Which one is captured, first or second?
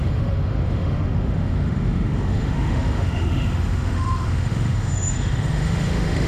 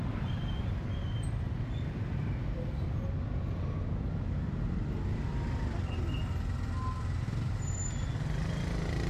second